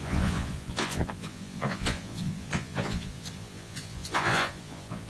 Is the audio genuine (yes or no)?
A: no